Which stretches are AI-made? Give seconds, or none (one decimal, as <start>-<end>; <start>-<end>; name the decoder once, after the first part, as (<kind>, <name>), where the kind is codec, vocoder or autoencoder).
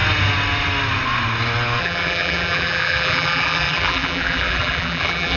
1.8-5.4 (vocoder, BigVGAN v2)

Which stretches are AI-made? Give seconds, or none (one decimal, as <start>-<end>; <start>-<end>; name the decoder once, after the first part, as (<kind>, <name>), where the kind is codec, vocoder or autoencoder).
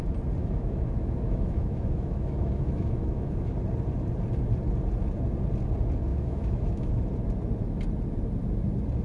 0.4-3.5 (autoencoder, DAC-VAE); 6.1-7.0